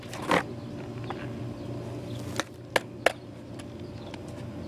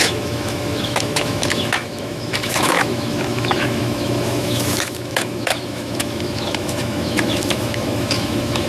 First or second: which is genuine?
first